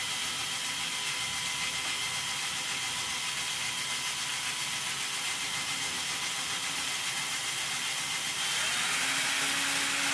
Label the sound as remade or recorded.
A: recorded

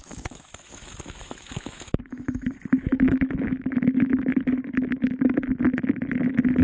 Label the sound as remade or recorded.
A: remade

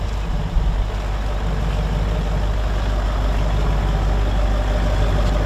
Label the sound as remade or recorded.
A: recorded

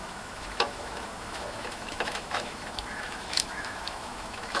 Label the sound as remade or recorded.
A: remade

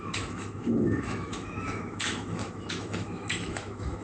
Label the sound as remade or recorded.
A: remade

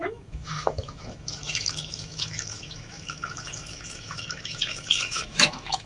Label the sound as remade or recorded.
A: remade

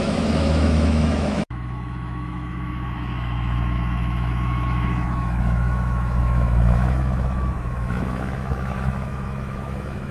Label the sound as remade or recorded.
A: remade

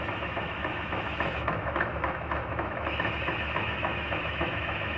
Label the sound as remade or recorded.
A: remade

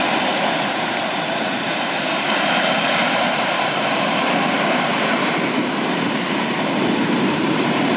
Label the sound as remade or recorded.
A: recorded